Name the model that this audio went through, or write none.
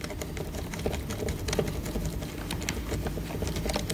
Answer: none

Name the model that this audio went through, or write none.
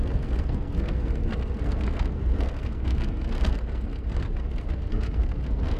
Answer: codec, SNAC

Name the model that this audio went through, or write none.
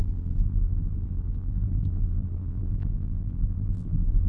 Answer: vocoder, BigVGAN v2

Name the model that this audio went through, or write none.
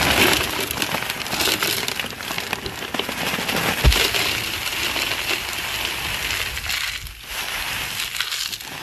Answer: none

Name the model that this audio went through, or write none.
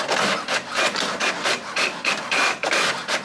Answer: none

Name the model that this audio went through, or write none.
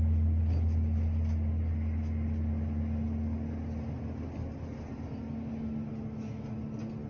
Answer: none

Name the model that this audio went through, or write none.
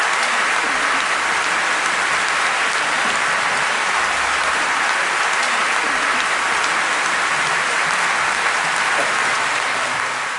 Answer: vocoder, BigVGAN v2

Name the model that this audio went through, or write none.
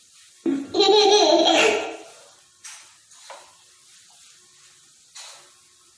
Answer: none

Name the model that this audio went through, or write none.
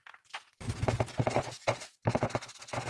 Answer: none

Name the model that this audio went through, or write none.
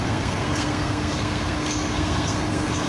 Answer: codec, SNAC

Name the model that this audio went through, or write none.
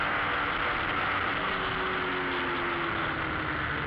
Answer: none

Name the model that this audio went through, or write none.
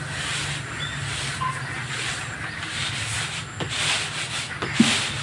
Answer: none